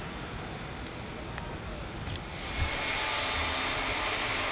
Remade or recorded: recorded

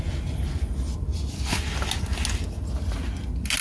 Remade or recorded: recorded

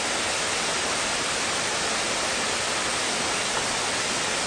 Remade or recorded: recorded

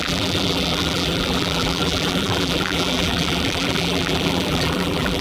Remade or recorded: remade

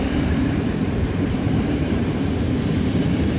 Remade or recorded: remade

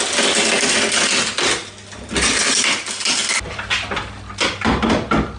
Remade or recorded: recorded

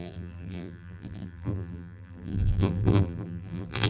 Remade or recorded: remade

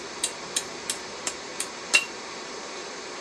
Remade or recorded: remade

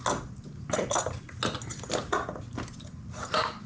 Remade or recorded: recorded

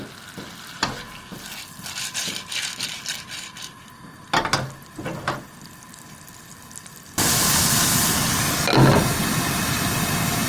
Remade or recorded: recorded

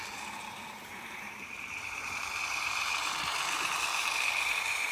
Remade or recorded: remade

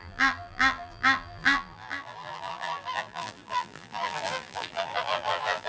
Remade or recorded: remade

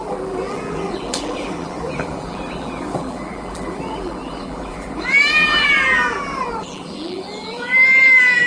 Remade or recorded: remade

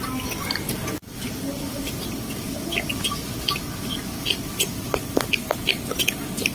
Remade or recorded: recorded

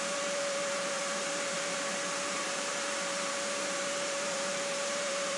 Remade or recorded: remade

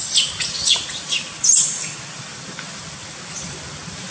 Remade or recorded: recorded